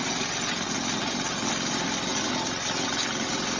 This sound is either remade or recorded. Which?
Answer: recorded